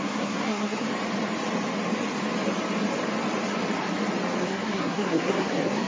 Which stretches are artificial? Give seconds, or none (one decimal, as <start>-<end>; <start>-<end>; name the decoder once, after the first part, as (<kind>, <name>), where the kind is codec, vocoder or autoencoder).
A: 0.0-0.9 (codec, SNAC); 4.4-5.9